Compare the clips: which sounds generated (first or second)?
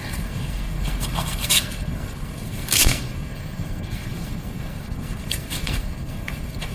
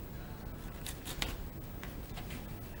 first